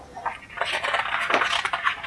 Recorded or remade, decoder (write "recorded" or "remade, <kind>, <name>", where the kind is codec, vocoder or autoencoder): recorded